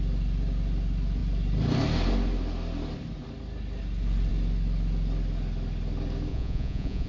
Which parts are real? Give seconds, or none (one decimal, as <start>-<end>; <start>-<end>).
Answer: 0.0-6.3